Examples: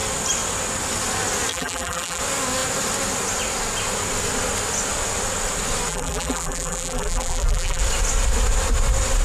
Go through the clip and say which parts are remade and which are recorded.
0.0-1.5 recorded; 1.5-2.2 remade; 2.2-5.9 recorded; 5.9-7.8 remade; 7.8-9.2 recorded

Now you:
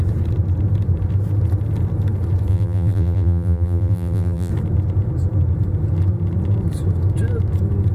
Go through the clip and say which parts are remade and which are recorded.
0.0-2.5 recorded; 2.5-4.5 remade; 4.5-7.9 recorded

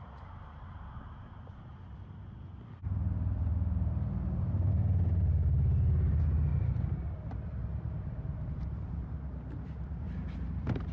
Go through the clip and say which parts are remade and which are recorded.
0.0-1.7 remade; 1.7-4.6 recorded; 4.6-10.9 remade

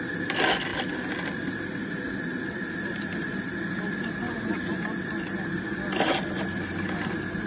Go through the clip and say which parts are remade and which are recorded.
0.0-0.7 recorded; 0.7-4.5 remade; 4.5-7.5 recorded

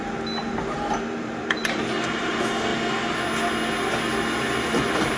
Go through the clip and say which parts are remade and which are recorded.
0.0-0.4 recorded; 0.4-2.3 remade; 2.3-5.2 recorded

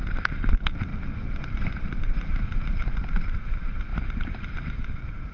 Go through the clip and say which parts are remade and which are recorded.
0.0-0.5 recorded; 0.5-3.9 remade; 3.9-4.8 recorded; 4.8-5.3 remade